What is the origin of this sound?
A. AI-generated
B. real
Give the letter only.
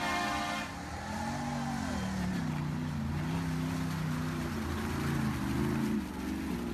B